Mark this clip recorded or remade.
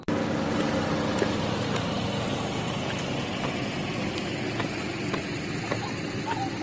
recorded